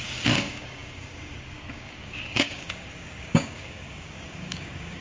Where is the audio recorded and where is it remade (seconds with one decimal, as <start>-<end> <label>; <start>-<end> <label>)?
0.0-5.0 remade